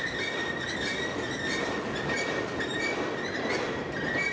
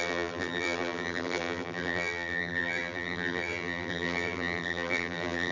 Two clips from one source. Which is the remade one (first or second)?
second